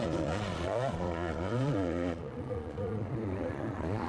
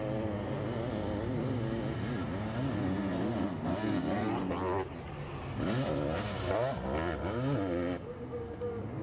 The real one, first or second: second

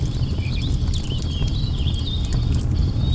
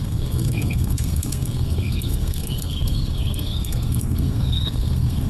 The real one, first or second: first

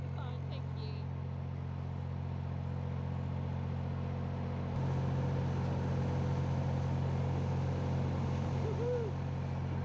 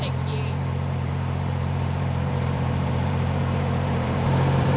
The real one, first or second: first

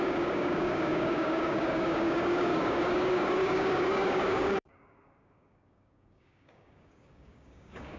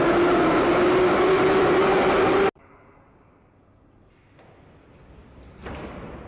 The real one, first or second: second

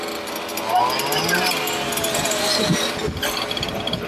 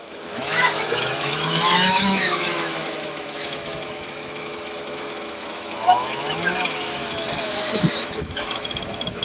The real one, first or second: first